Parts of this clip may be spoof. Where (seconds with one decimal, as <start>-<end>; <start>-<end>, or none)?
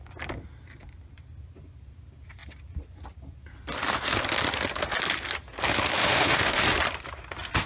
6.0-6.6